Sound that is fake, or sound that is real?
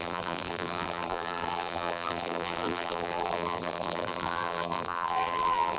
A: fake